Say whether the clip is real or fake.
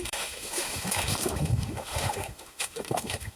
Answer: fake